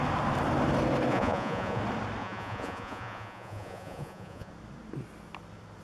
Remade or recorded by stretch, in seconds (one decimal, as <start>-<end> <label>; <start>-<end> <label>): 0.0-1.1 recorded; 1.1-1.8 remade; 1.8-2.2 recorded; 2.2-4.5 remade; 4.5-5.8 recorded